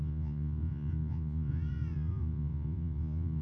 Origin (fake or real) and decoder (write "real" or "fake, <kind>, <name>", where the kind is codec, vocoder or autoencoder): fake, vocoder, Vocos